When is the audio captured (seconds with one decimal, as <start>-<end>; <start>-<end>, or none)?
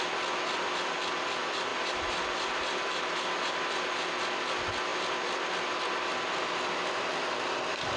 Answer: 0.0-8.0